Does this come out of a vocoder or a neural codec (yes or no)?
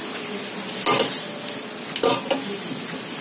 no